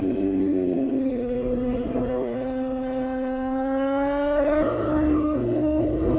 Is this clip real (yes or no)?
no